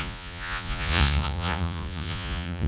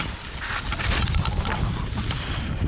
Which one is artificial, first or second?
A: first